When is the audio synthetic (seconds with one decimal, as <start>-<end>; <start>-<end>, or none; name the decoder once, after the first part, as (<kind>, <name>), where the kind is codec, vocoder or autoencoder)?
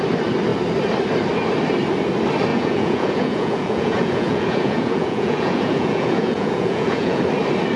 2.5-7.2 (vocoder, Vocos)